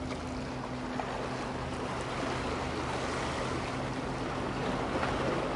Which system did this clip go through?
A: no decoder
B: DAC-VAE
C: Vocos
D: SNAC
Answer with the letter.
A